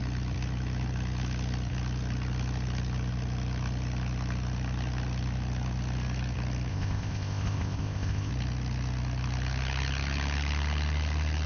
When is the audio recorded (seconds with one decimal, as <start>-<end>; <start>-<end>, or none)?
0.0-6.7; 8.3-11.5